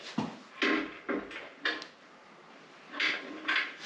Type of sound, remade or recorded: recorded